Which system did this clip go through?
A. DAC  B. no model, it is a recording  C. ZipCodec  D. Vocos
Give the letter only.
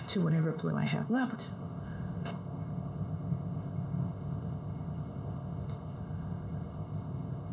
C